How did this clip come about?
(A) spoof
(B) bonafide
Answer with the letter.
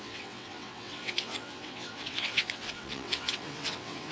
A